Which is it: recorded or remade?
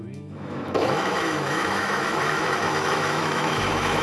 remade